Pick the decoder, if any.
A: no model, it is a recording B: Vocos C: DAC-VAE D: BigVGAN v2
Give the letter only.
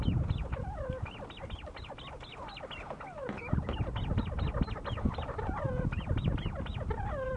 A